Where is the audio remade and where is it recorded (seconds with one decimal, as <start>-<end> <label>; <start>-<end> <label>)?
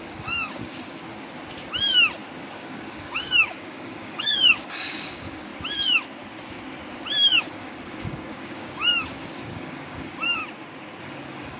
0.0-1.0 remade; 1.0-2.5 recorded; 2.5-5.5 remade; 5.5-7.4 recorded; 7.4-10.4 remade; 10.4-11.0 recorded; 11.0-11.6 remade